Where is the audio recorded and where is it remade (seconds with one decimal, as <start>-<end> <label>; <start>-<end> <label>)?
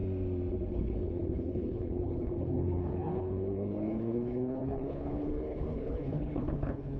0.0-0.7 recorded; 0.7-7.0 remade